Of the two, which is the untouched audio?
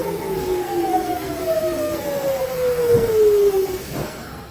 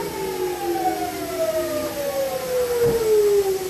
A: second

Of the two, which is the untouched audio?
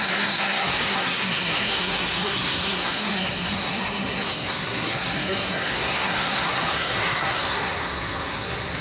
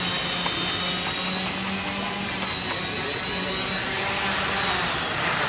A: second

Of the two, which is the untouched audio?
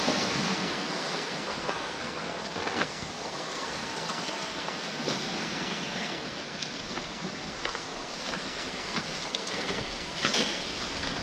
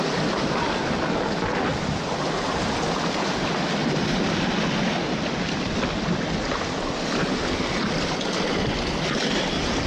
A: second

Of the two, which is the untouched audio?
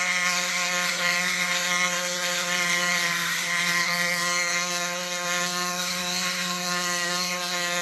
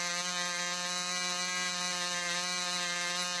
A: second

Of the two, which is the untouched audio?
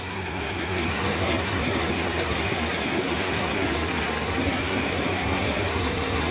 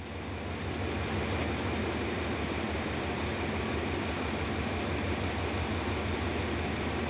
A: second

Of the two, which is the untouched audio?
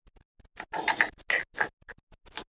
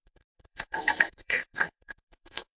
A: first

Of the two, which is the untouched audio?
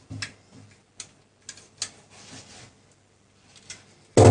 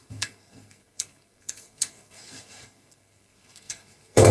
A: first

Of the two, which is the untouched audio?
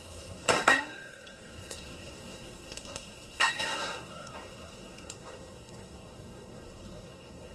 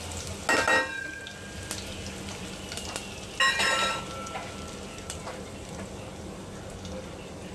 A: second